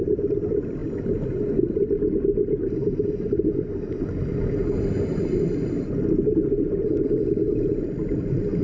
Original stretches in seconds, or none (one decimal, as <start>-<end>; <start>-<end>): 0.0-8.6